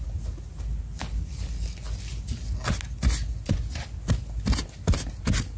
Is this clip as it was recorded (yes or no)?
yes